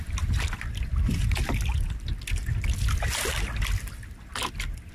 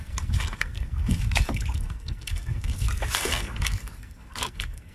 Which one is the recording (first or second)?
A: first